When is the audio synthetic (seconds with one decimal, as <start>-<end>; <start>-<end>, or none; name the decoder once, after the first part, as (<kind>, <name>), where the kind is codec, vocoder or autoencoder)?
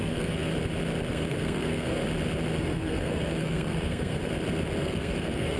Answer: 0.0-0.5 (codec, SNAC); 1.1-2.0; 2.6-4.2; 4.8-5.6